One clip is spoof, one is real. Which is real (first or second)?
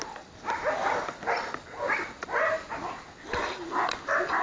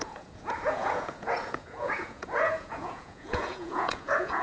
first